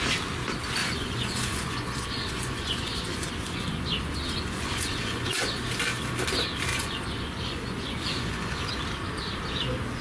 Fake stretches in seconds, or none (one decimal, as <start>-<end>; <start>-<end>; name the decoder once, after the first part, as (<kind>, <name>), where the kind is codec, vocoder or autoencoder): 0.8-5.6 (vocoder, Vocos); 6.7-8.7

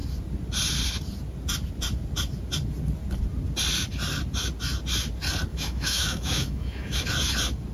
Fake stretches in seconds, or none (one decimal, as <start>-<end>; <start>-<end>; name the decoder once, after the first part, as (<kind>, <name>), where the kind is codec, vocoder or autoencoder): 5.5-7.1 (autoencoder, DAC-VAE)

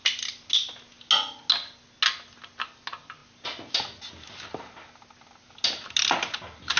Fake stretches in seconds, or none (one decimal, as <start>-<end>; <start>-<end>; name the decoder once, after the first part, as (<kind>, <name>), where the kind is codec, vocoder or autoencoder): none

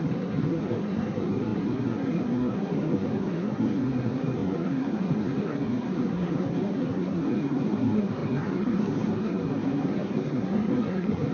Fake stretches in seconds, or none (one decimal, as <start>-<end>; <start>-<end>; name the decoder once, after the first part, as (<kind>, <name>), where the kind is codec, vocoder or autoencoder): 0.0-11.3 (codec, SNAC)